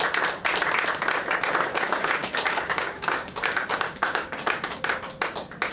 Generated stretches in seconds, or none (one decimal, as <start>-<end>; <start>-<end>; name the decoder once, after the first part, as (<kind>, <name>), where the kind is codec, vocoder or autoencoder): 1.7-4.8 (codec, DAC)